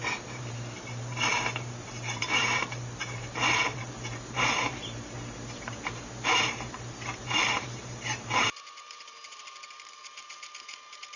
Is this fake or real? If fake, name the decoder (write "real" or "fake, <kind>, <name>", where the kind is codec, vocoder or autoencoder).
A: fake, vocoder, BigVGAN v2